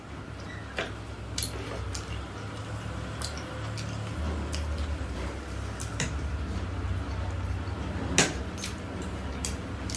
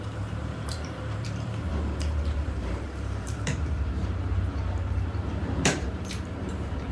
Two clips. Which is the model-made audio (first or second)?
second